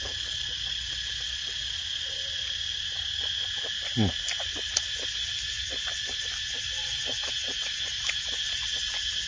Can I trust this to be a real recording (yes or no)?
yes